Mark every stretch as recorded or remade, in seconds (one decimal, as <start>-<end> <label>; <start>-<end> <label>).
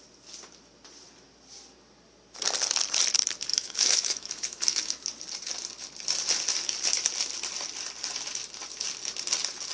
0.0-3.5 recorded; 3.5-5.0 remade; 5.0-9.7 recorded